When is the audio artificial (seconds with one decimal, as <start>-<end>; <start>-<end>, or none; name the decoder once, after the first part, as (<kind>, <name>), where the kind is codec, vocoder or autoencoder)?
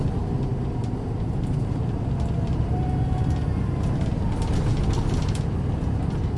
0.5-3.7 (vocoder, BigVGAN v2)